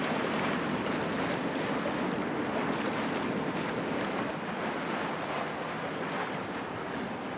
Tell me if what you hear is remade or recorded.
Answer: recorded